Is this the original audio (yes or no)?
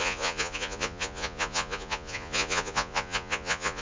no